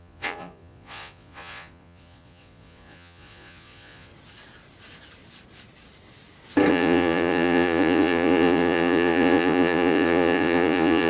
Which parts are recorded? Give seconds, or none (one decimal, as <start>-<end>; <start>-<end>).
4.1-6.7